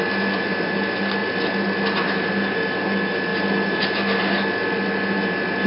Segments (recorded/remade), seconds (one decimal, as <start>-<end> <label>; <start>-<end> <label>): 0.0-1.2 recorded; 1.2-1.8 remade; 1.8-5.7 recorded